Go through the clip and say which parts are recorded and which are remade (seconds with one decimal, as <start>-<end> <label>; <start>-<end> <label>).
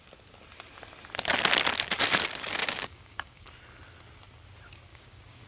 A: 0.0-2.6 recorded; 2.6-3.6 remade; 3.6-4.9 recorded; 4.9-5.5 remade